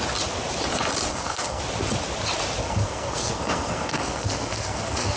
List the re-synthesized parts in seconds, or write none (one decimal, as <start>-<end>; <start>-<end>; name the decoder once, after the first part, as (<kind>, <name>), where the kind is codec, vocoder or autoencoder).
1.1-1.6 (codec, SNAC); 2.6-5.2

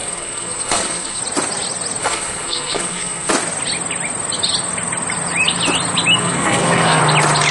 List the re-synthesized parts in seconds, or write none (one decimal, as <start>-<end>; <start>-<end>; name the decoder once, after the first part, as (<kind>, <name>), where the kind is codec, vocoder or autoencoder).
0.0-1.2 (codec, SNAC); 2.0-3.3; 6.2-7.0

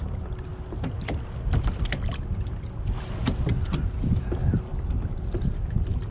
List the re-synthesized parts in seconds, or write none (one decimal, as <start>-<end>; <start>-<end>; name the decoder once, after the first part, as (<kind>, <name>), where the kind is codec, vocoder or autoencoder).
none